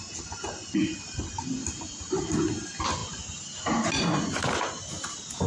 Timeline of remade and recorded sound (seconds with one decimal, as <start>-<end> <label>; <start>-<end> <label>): 0.0-5.5 recorded